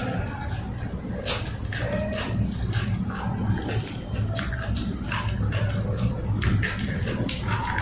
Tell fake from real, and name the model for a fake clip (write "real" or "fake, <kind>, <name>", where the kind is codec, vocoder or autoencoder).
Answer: real